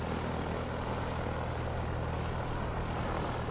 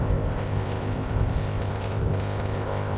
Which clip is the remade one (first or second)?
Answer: second